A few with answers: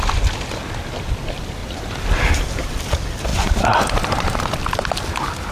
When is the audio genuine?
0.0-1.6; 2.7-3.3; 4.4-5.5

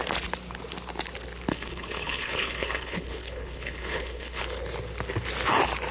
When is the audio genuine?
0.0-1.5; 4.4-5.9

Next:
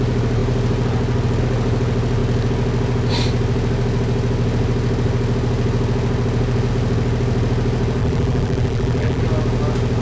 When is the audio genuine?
0.0-8.0; 9.2-10.0

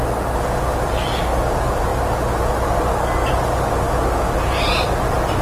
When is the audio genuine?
0.0-5.4

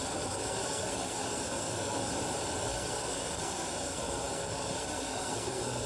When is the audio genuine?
2.1-2.7

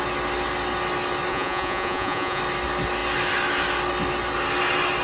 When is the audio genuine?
0.0-1.3; 2.4-5.0

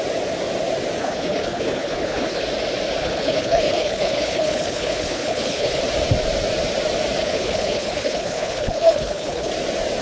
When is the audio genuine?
0.0-1.0; 2.4-3.0; 5.8-7.2; 9.5-10.0